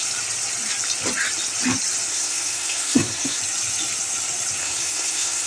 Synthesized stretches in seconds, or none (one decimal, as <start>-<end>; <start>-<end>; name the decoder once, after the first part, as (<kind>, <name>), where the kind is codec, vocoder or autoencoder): 2.1-3.4 (codec, SNAC); 4.6-5.5